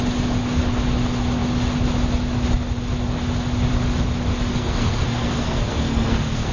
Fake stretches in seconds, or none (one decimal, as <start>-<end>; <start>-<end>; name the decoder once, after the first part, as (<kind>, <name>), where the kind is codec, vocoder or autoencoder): 4.5-6.5 (codec, SNAC)